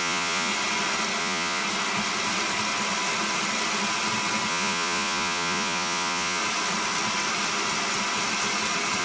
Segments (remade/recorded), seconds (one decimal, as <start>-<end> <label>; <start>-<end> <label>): 0.0-0.5 remade; 0.5-1.2 recorded; 1.2-1.6 remade; 1.6-4.5 recorded; 4.5-6.4 remade; 6.4-9.0 recorded